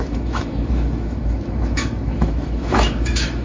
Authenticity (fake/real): fake